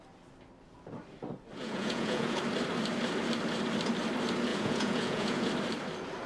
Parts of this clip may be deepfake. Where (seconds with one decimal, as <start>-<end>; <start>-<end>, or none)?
1.6-2.4; 4.5-5.5